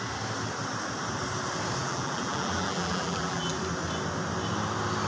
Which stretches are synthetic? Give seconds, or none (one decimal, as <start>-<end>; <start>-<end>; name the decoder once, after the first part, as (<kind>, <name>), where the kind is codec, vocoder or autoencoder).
1.8-3.5 (vocoder, BigVGAN v2)